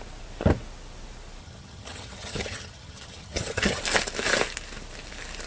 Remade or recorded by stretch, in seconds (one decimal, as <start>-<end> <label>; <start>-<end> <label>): 0.0-1.4 recorded; 1.4-3.8 remade; 3.8-5.5 recorded